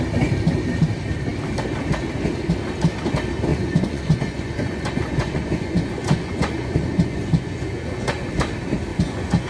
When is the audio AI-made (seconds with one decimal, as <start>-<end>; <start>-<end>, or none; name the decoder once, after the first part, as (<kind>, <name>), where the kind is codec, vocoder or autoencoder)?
3.5-8.3 (vocoder, Vocos); 8.9-9.5